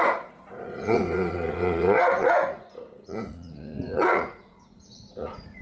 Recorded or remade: remade